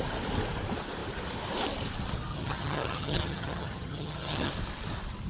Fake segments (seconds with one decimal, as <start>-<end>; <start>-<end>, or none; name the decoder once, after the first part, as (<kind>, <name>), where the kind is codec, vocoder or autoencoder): 2.3-4.5 (vocoder, HiFi-GAN)